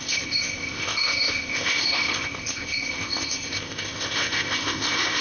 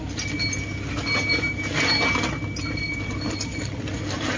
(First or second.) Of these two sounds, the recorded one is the second